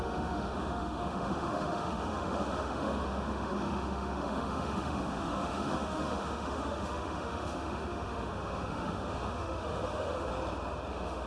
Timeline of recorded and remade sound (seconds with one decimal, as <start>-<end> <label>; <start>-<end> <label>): 0.0-10.3 remade; 10.3-10.9 recorded; 10.9-11.3 remade